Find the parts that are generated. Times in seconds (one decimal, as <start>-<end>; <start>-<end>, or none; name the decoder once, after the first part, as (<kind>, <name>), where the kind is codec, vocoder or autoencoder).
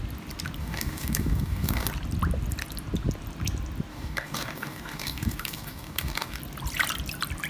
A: 0.6-1.9 (codec, DAC); 3.9-6.4